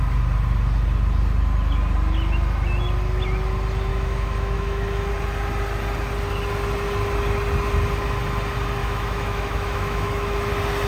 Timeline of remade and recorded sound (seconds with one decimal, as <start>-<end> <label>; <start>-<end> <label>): 0.0-3.9 recorded; 3.9-5.1 remade; 5.1-8.8 recorded; 8.8-10.5 remade; 10.5-10.9 recorded

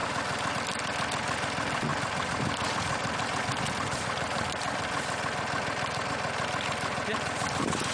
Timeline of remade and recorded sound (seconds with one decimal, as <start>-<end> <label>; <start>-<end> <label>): 0.0-7.9 recorded

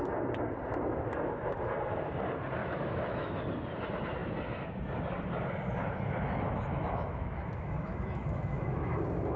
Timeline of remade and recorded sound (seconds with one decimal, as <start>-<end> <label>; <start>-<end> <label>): 0.0-2.6 recorded; 2.6-3.4 remade; 3.4-6.7 recorded; 6.7-9.0 remade; 9.0-9.4 recorded

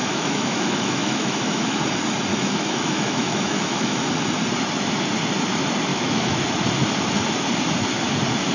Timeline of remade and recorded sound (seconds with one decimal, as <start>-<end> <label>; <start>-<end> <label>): 0.0-1.8 remade; 1.8-2.3 recorded; 2.3-4.1 remade; 4.1-5.9 recorded; 5.9-6.4 remade; 6.4-8.5 recorded

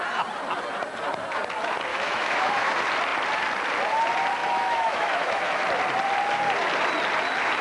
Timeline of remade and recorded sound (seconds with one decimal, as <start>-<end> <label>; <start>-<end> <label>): 0.0-1.9 recorded; 1.9-2.7 remade; 2.7-4.4 recorded; 4.4-5.6 remade; 5.6-7.6 recorded

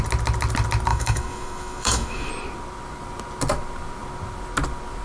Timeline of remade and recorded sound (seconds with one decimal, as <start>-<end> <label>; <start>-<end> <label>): 0.0-0.9 recorded; 0.9-2.3 remade; 2.3-5.0 recorded